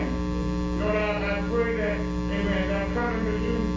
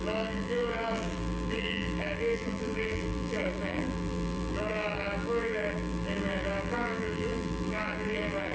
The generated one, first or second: second